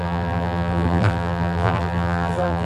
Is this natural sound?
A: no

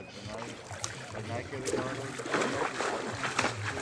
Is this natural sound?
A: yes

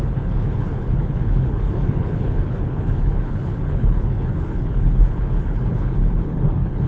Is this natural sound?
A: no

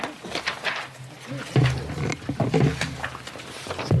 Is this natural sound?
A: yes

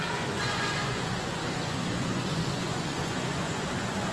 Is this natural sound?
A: no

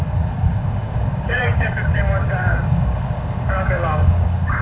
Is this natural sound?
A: no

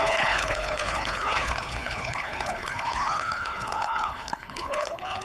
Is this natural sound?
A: no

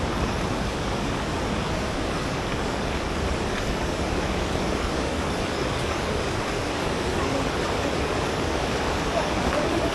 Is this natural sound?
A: no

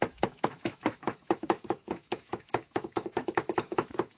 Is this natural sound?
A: no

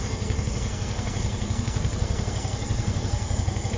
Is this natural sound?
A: no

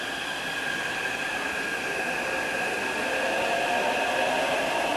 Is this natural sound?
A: yes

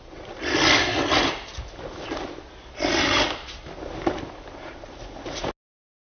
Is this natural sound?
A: yes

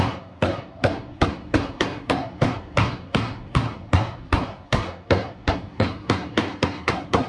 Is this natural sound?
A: no